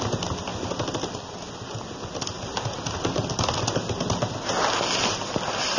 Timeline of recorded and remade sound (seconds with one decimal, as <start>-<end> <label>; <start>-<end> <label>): 0.0-5.8 recorded